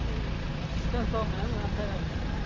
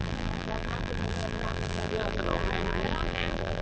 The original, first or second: first